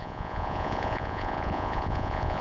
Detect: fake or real fake